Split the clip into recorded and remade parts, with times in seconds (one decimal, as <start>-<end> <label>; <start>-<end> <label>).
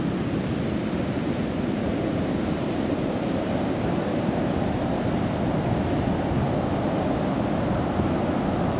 0.0-1.9 recorded; 1.9-4.8 remade; 4.8-8.8 recorded